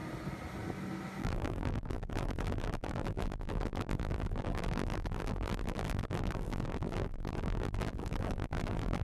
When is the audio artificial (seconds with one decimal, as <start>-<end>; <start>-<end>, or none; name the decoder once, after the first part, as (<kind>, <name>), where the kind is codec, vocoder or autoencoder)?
1.2-9.0 (vocoder, BigVGAN v2)